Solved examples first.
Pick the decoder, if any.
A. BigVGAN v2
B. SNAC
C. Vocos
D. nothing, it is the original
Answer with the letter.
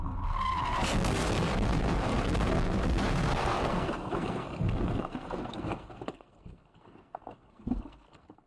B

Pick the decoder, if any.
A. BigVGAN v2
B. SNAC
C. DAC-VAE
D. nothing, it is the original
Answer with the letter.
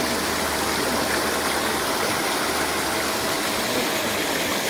D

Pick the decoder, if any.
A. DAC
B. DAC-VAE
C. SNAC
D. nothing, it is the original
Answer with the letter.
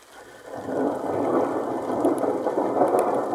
D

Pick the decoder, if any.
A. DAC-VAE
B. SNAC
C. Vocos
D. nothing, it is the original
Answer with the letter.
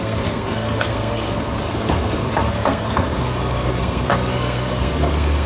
B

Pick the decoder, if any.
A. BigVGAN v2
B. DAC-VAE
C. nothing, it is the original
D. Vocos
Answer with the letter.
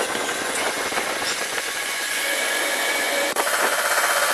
D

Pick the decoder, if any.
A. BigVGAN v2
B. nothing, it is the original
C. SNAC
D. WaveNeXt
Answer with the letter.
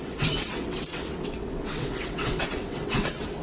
D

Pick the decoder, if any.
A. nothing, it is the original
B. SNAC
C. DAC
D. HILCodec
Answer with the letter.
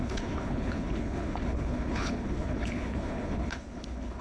D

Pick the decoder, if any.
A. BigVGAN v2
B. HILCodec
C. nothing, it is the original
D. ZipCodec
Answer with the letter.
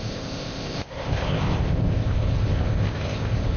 D